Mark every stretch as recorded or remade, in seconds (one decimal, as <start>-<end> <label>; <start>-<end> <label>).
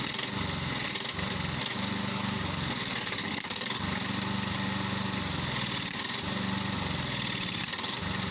0.0-2.0 recorded; 2.0-4.0 remade; 4.0-8.3 recorded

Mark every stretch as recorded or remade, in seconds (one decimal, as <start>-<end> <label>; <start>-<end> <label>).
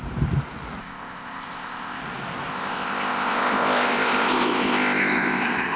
0.0-0.8 recorded; 0.8-2.0 remade; 2.0-2.5 recorded; 2.5-5.8 remade